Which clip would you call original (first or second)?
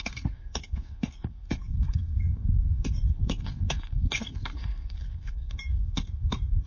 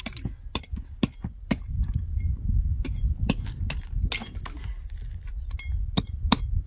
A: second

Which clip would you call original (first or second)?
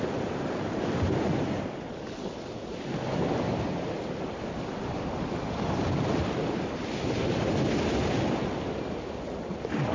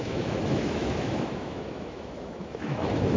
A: first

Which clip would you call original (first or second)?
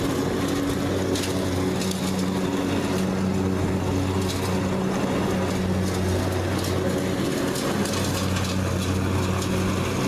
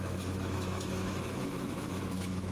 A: first